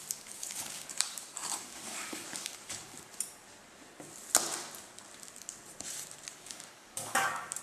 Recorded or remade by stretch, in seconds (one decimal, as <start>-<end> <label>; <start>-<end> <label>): 0.0-3.1 remade; 3.1-6.3 recorded; 6.3-7.6 remade